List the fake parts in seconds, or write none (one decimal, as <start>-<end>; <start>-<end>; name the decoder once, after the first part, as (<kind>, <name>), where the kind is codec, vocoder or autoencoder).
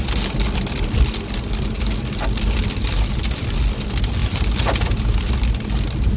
none